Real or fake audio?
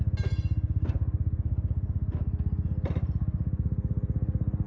real